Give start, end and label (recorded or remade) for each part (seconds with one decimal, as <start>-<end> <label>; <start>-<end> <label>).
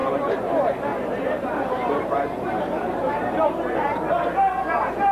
0.0-0.5 remade; 0.5-0.9 recorded; 0.9-4.0 remade; 4.0-5.1 recorded